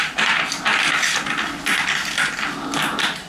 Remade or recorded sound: recorded